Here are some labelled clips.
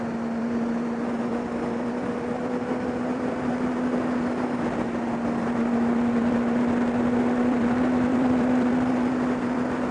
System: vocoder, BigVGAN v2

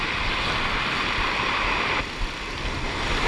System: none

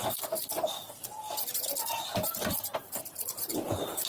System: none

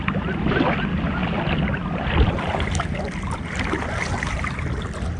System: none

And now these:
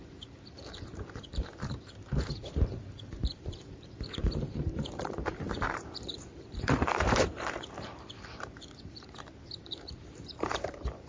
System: vocoder, BigVGAN v2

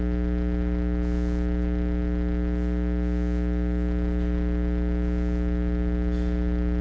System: none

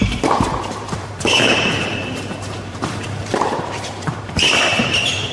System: vocoder, BigVGAN v2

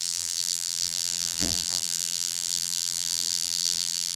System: vocoder, BigVGAN v2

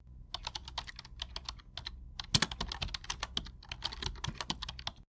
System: none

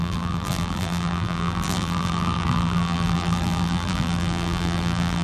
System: vocoder, BigVGAN v2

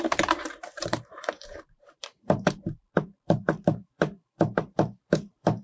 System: vocoder, BigVGAN v2